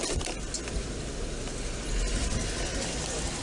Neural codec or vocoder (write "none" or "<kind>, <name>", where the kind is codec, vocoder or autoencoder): none